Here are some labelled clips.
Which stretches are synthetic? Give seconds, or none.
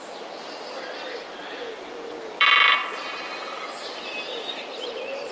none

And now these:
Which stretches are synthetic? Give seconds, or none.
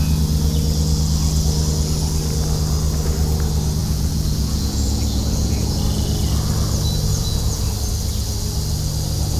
3.8-5.8 (vocoder, Vocos); 7.1-7.7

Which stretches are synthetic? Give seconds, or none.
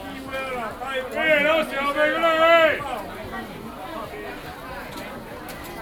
none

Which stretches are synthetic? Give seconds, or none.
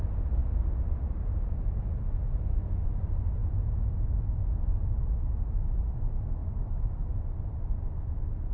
3.4-4.5 (vocoder, Vocos)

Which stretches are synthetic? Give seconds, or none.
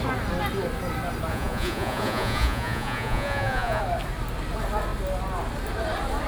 1.3-3.8 (vocoder, Vocos)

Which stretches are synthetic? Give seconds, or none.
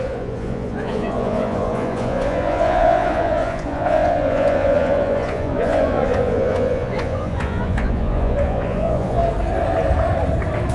0.0-9.2 (vocoder, Vocos)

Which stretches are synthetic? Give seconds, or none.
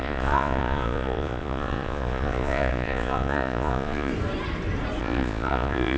0.0-4.1 (vocoder, Vocos); 5.0-6.0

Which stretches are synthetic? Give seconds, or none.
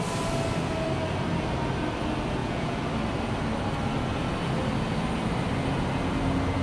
2.4-2.9 (vocoder, Vocos)